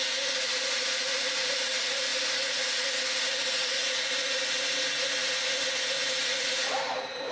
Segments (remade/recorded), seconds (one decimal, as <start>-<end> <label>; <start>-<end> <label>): 0.0-2.1 remade; 2.1-6.2 recorded; 6.2-7.3 remade